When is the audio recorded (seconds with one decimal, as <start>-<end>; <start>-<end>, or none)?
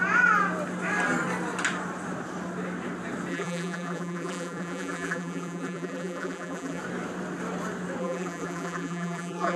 0.0-3.3; 6.8-8.0